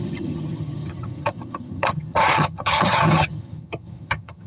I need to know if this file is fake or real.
fake